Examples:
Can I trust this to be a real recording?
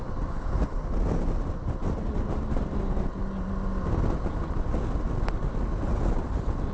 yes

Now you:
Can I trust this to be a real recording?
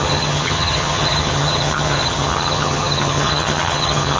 no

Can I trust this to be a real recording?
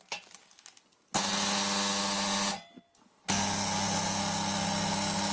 yes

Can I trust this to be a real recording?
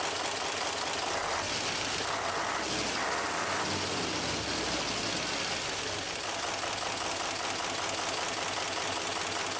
yes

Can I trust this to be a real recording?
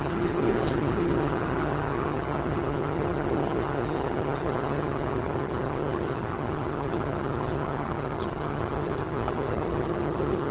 no